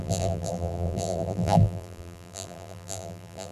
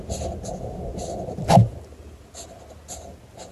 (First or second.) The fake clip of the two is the first